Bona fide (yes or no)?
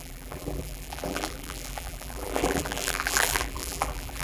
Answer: no